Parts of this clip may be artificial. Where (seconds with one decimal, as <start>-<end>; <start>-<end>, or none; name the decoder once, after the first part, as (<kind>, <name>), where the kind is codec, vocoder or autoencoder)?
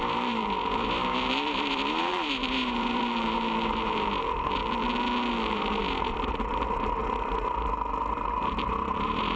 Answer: 0.0-4.6 (vocoder, BigVGAN v2); 5.3-7.0; 8.1-9.4